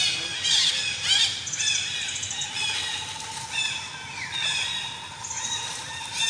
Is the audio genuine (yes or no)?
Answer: yes